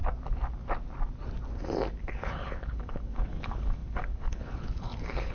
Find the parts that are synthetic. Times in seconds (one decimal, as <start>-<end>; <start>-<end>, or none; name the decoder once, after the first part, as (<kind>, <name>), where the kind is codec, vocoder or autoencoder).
2.0-5.3 (codec, HILCodec)